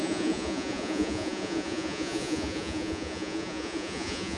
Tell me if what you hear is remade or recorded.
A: remade